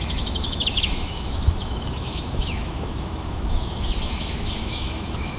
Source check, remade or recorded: remade